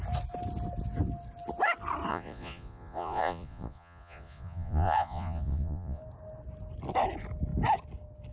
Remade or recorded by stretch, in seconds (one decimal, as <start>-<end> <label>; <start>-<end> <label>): 0.0-2.1 recorded; 2.1-6.0 remade; 6.0-8.3 recorded